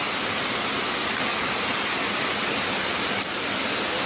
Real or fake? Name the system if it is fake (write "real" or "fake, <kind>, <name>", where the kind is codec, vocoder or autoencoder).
real